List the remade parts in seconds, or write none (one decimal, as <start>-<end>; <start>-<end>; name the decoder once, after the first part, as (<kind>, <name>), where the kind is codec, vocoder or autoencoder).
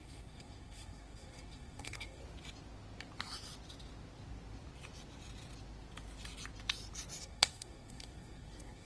0.0-2.2 (codec, SNAC); 7.2-8.8